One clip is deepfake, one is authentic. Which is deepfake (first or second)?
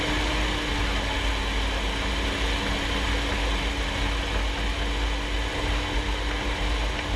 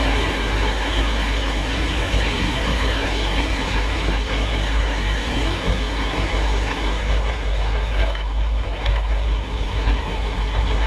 second